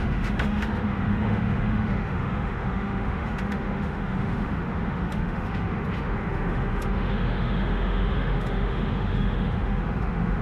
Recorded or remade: remade